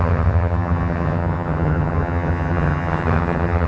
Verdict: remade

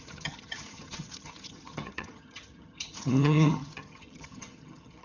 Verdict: remade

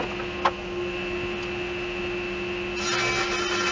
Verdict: recorded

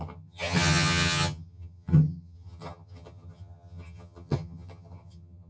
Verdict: remade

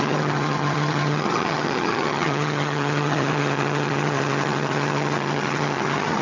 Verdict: remade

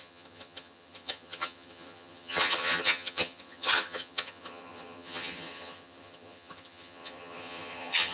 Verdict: remade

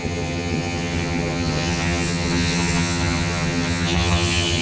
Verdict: remade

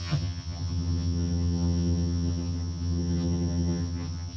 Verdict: remade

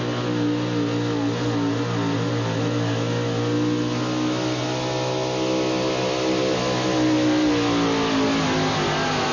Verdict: recorded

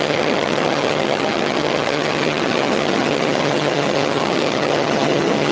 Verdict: remade